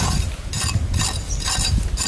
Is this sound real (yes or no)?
yes